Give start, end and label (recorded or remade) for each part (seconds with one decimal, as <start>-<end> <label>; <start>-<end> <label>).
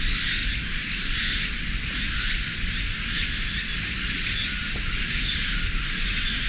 0.0-6.5 recorded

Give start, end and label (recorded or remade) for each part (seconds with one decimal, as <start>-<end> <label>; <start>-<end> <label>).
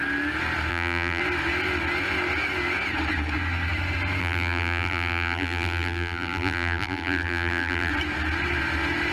0.0-0.7 recorded; 0.7-1.2 remade; 1.2-4.2 recorded; 4.2-7.9 remade; 7.9-9.1 recorded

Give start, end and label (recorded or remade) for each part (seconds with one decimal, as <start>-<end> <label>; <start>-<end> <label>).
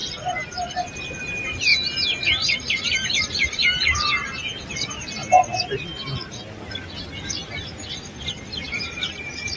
0.0-7.4 recorded; 7.4-9.6 remade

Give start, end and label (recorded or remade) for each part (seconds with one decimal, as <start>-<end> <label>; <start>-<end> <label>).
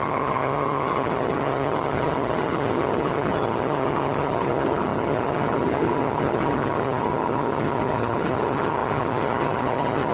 0.0-10.1 remade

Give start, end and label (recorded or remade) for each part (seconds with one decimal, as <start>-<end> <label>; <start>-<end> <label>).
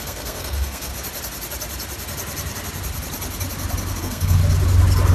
0.0-0.9 remade; 0.9-4.0 recorded; 4.0-4.4 remade; 4.4-5.1 recorded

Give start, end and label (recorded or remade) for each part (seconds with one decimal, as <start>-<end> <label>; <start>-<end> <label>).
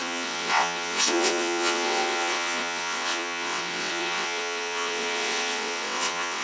0.0-6.4 remade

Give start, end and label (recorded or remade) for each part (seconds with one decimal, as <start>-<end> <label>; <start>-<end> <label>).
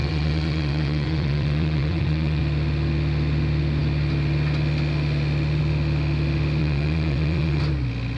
0.0-2.4 remade; 2.4-6.6 recorded; 6.6-7.6 remade; 7.6-8.2 recorded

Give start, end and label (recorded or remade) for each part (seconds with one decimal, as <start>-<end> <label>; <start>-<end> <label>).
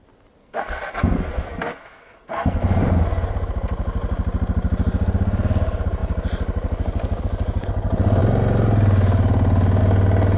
0.0-0.4 recorded; 0.4-2.8 remade; 2.8-10.4 recorded